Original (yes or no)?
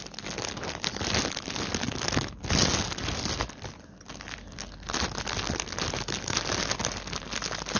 yes